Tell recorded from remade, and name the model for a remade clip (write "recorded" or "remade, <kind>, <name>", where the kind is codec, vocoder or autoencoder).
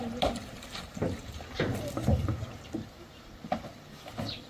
recorded